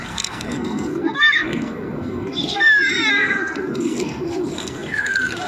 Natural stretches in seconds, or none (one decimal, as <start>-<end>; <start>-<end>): none